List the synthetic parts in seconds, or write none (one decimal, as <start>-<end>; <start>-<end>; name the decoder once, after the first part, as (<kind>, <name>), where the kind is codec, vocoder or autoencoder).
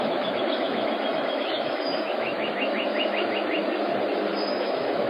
0.0-2.9 (autoencoder, DAC-VAE); 4.5-5.1